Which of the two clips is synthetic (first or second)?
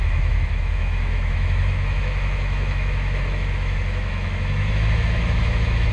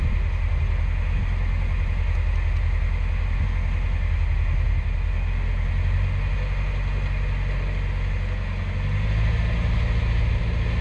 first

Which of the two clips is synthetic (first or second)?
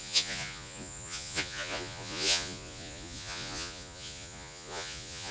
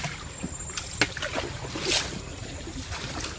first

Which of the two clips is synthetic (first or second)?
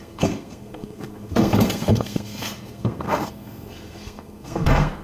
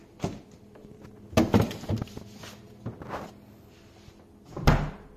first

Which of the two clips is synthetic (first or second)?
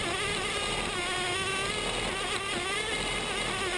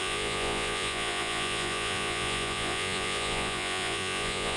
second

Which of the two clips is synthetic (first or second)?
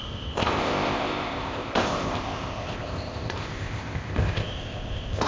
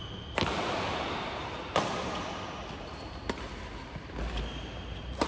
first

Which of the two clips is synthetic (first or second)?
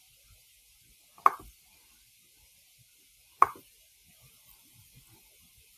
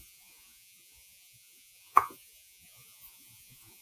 second